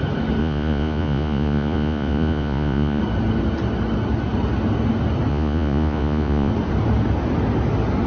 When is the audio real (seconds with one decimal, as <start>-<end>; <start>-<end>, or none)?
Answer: 0.0-0.4; 3.0-5.3; 6.5-8.1